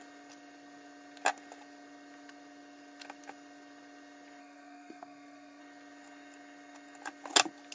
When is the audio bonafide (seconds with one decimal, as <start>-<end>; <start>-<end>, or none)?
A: 0.0-4.4; 5.6-7.7